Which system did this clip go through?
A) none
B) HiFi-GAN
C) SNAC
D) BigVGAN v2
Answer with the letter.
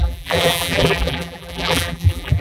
D